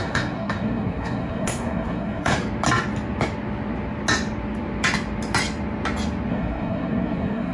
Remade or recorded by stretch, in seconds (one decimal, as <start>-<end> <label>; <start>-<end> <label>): 0.0-2.4 remade; 2.4-6.3 recorded; 6.3-7.5 remade